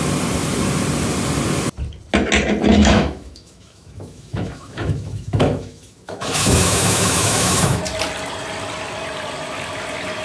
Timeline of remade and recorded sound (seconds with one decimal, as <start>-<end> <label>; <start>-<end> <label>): 0.0-2.7 recorded; 2.7-7.8 remade; 7.8-10.2 recorded

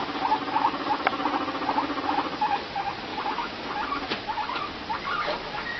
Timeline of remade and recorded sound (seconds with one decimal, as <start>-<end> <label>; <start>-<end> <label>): 0.0-3.1 recorded; 3.1-3.7 remade; 3.7-5.8 recorded